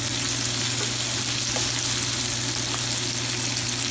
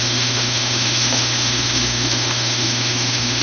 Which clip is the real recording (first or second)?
first